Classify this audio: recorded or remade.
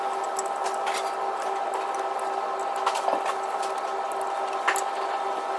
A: recorded